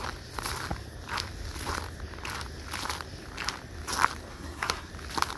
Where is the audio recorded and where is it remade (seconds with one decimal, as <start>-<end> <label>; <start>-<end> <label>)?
0.0-4.3 recorded; 4.3-4.9 remade; 4.9-5.4 recorded